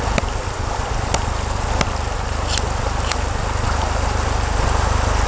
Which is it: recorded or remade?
recorded